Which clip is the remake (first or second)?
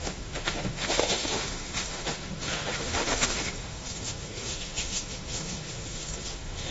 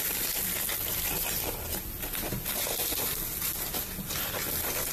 first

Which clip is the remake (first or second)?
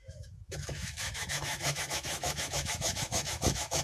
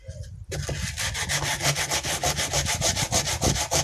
first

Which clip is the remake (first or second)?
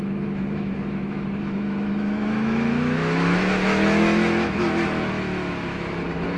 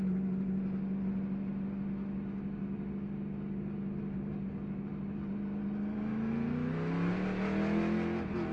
first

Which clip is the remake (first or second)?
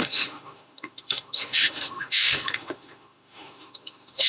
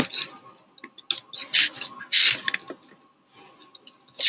first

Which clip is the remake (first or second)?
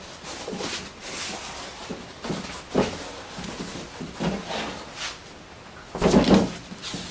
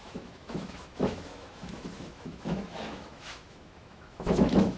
second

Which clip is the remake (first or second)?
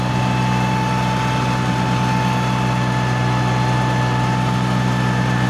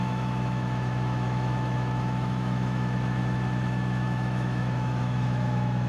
second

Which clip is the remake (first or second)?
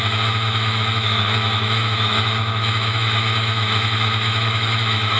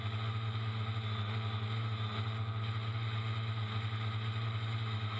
first